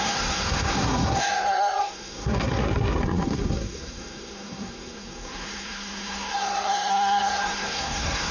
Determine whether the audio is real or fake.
fake